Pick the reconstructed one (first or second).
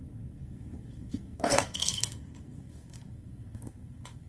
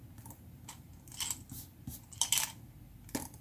first